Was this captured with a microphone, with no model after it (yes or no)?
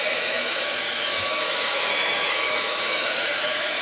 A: no